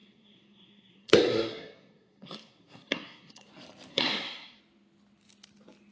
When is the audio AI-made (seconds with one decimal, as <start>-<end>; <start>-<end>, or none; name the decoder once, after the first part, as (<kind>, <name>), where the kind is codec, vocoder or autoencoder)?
0.0-3.5 (codec, SNAC); 3.9-4.6